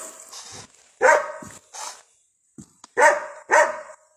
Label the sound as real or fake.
real